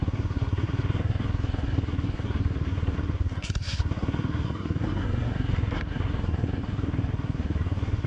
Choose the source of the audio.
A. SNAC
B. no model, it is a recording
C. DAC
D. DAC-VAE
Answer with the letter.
A